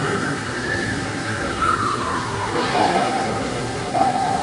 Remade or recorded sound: remade